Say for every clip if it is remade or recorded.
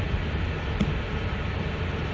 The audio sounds recorded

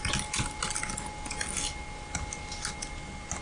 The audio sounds recorded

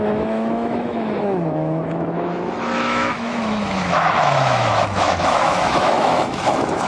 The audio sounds remade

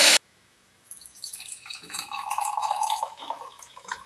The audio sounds remade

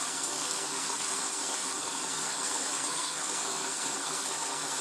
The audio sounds remade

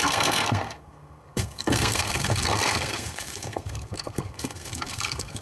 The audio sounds remade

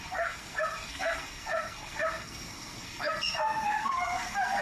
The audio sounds remade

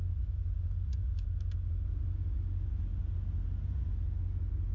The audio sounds recorded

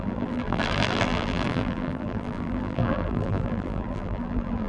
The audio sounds remade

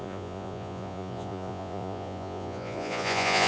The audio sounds remade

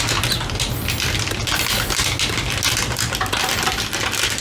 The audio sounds recorded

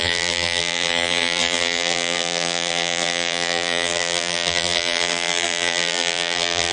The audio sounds remade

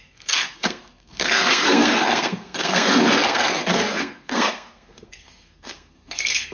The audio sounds remade